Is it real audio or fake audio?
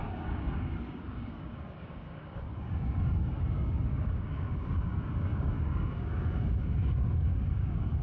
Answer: fake